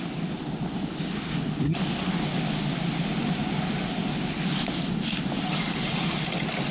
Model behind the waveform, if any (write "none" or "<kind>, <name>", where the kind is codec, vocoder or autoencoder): none